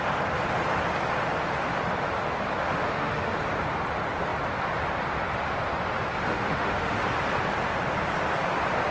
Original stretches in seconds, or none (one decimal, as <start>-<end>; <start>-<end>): 0.0-2.6; 3.4-6.3; 7.0-8.9